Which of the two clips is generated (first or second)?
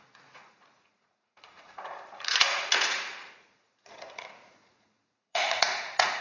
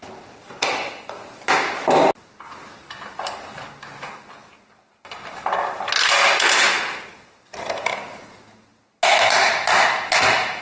first